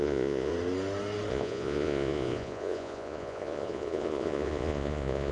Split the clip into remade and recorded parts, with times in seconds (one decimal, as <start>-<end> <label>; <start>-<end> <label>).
0.0-0.5 remade; 0.5-1.3 recorded; 1.3-5.3 remade